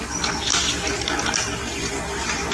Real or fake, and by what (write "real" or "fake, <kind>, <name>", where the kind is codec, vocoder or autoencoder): real